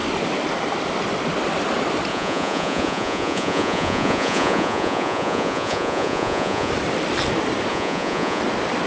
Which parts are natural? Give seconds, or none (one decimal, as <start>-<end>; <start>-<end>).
0.0-2.1; 6.7-7.7; 8.4-8.9